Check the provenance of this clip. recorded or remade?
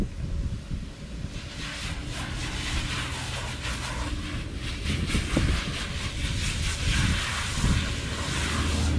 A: recorded